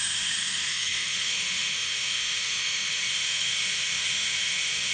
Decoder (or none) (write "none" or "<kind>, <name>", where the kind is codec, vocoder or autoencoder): autoencoder, DAC-VAE